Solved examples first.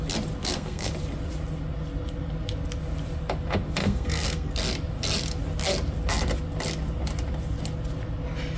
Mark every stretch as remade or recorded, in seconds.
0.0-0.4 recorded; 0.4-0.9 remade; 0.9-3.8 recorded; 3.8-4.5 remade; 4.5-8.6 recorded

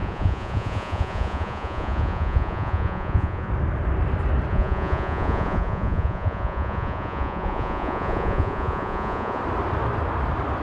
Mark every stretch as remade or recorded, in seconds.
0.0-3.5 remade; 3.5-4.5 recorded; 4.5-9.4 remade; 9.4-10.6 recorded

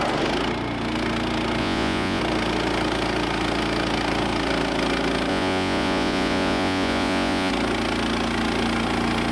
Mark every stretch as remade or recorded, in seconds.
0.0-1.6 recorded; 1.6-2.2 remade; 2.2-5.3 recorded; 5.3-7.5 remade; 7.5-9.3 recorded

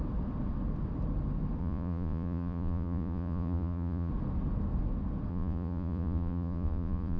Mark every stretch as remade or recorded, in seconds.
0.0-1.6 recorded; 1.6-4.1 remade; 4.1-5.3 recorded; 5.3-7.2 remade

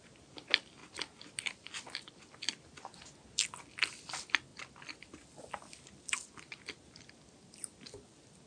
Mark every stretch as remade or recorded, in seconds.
0.0-8.5 recorded